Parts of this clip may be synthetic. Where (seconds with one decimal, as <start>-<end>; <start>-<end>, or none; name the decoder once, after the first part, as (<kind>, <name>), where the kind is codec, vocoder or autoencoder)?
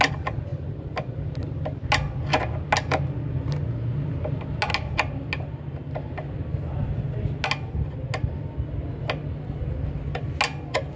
none